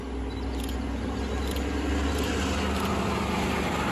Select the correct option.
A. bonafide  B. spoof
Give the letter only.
A